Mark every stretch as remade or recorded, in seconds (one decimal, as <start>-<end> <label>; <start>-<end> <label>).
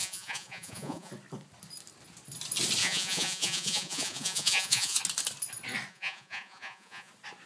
0.0-1.1 remade; 1.1-2.8 recorded; 2.8-5.0 remade; 5.0-5.9 recorded; 5.9-7.1 remade; 7.1-7.5 recorded